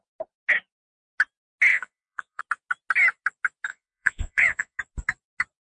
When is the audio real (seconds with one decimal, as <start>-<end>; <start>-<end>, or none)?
0.0-1.7; 2.4-3.7; 4.8-5.6